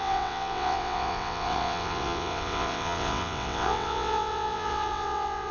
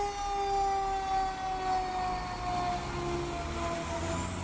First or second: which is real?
second